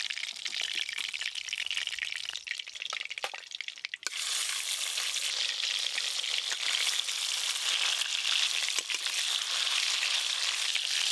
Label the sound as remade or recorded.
recorded